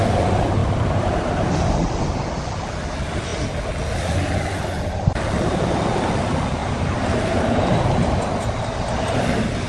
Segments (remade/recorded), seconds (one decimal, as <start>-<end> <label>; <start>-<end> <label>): 0.0-0.6 recorded; 0.6-1.5 remade; 1.5-6.6 recorded; 6.6-7.8 remade; 7.8-9.7 recorded